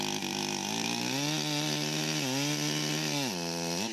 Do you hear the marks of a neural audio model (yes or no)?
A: no